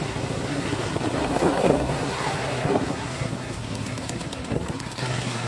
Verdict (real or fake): fake